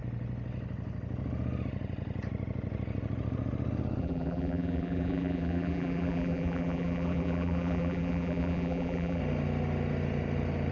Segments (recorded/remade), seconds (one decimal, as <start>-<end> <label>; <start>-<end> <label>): 0.0-4.0 recorded; 4.0-9.2 remade; 9.2-10.7 recorded